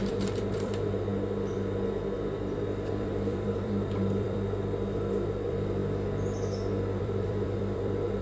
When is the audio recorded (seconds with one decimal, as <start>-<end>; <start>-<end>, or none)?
1.1-2.9; 5.8-7.0